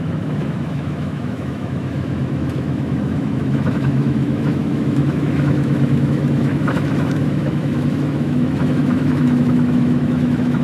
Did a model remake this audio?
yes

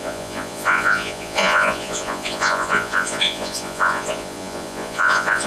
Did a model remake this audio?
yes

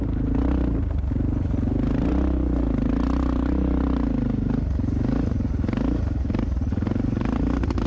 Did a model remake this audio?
no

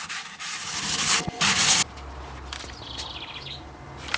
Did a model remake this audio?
no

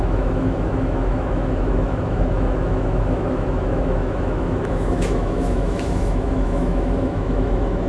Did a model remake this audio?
yes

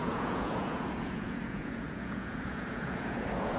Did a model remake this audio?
yes